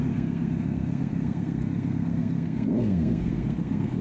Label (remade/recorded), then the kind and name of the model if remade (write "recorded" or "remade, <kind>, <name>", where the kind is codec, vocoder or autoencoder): remade, codec, SNAC